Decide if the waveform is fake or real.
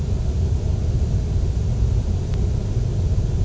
real